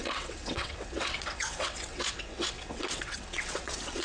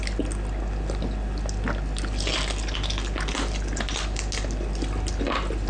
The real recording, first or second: second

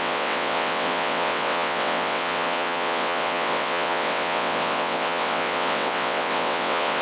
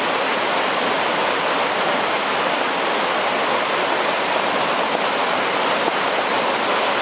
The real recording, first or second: second